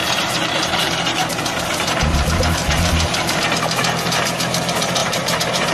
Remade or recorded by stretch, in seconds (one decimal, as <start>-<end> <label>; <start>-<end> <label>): 0.0-3.4 remade; 3.4-5.0 recorded; 5.0-5.7 remade